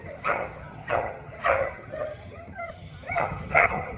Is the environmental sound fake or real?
fake